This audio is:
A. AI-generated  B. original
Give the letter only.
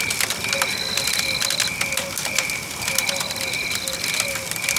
B